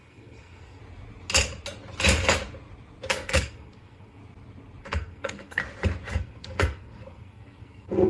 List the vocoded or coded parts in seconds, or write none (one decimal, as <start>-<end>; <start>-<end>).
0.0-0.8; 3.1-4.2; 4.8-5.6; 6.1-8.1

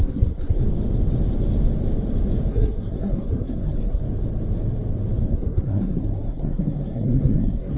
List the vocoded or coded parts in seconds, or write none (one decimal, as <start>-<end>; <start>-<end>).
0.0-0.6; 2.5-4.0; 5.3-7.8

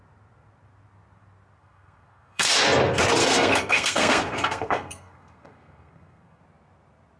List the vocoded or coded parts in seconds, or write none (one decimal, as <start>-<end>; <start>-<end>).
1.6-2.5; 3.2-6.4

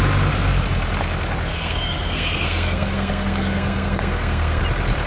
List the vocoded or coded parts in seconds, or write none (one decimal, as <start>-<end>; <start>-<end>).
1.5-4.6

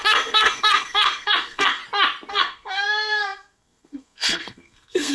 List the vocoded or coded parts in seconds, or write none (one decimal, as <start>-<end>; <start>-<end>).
0.0-1.8; 2.3-5.1

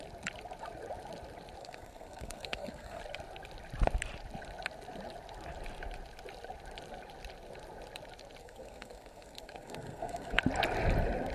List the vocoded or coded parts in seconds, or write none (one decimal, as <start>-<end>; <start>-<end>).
1.6-3.0; 8.4-10.4

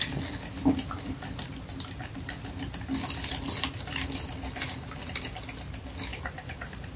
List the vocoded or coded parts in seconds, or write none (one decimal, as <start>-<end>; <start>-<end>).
none